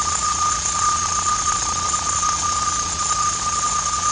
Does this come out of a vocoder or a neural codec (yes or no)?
yes